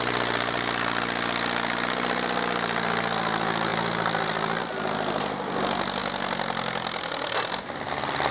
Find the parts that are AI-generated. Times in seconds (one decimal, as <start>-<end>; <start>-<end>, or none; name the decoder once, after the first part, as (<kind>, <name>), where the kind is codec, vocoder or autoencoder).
none